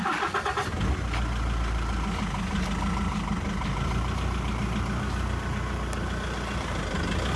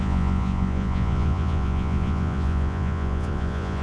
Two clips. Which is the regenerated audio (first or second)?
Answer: second